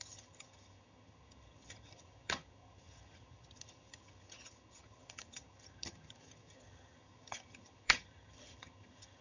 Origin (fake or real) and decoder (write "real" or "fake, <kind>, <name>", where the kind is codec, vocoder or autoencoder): fake, vocoder, HiFi-GAN